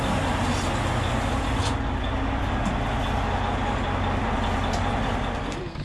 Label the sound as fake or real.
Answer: real